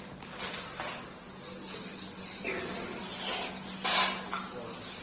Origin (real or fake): real